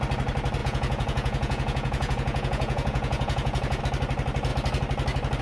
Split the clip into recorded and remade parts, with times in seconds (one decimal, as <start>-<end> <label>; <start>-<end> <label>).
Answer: 0.0-0.6 recorded; 0.6-3.8 remade; 3.8-5.4 recorded